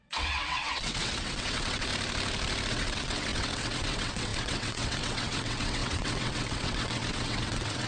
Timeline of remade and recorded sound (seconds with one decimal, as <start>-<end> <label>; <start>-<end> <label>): 0.0-1.9 remade; 1.9-2.7 recorded; 2.7-7.9 remade